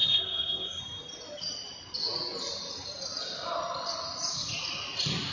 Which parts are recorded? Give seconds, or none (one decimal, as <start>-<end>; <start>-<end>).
0.8-5.3